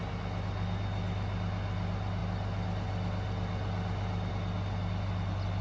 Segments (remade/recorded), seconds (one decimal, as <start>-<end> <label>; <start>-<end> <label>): 0.0-5.6 recorded